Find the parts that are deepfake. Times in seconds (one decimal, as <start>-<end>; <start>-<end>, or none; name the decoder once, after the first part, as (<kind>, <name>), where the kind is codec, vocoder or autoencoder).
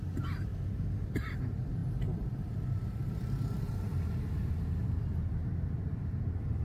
0.0-0.5 (vocoder, BigVGAN v2); 1.1-6.6